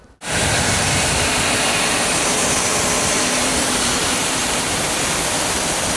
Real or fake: fake